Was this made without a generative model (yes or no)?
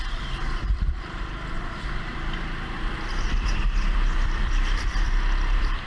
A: no